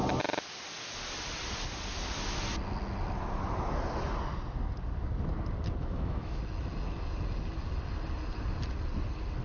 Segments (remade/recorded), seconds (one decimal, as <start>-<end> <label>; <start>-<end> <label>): 0.0-5.8 recorded; 5.8-6.4 remade; 6.4-9.4 recorded